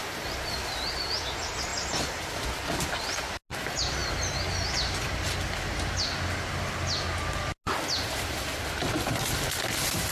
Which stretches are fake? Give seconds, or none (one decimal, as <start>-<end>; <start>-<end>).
none